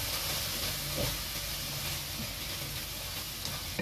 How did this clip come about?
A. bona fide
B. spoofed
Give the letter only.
A